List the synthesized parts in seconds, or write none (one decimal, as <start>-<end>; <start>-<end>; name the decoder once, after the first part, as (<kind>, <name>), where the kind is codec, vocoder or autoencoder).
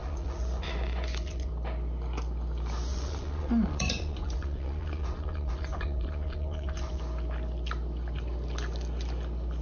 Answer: 0.0-1.5 (vocoder, Vocos); 2.9-7.0